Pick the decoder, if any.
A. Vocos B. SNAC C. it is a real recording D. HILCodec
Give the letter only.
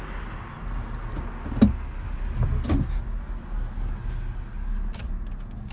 C